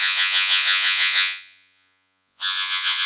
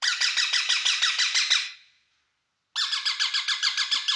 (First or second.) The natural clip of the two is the second